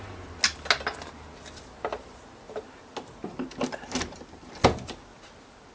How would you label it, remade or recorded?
recorded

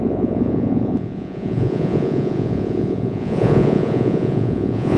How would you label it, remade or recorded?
remade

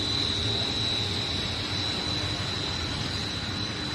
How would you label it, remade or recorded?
recorded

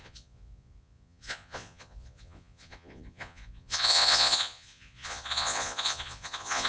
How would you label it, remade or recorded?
remade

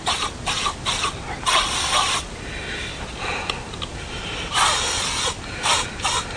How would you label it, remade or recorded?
recorded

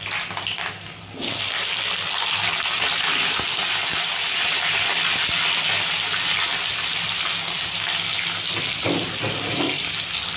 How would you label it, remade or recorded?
recorded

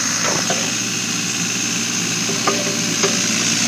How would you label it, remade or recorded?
recorded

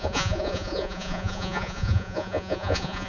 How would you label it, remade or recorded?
remade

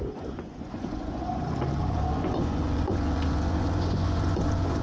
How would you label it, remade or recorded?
remade